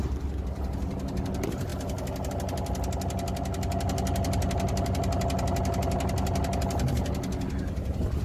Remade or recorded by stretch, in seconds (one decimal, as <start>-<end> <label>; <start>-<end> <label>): 0.0-8.2 recorded